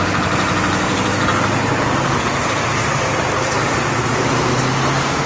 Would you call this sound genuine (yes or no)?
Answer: yes